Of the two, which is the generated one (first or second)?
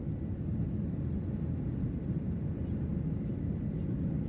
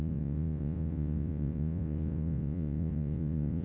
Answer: second